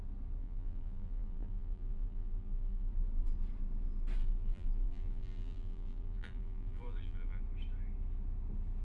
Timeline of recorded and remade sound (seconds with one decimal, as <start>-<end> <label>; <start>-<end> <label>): 0.0-0.4 recorded; 0.4-2.9 remade; 2.9-4.2 recorded; 4.2-7.4 remade; 7.4-8.8 recorded